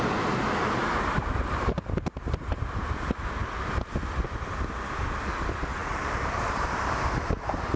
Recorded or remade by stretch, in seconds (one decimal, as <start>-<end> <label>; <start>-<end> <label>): 0.0-0.8 recorded; 0.8-2.2 remade; 2.2-5.8 recorded; 5.8-7.2 remade; 7.2-7.8 recorded